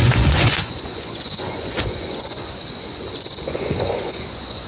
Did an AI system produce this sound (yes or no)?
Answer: yes